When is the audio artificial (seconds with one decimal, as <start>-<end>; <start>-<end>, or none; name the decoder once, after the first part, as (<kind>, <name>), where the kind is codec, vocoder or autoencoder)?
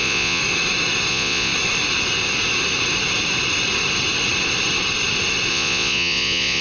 0.0-0.4 (vocoder, Vocos); 1.1-1.5; 5.5-6.6